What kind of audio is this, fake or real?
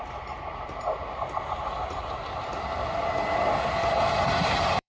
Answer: fake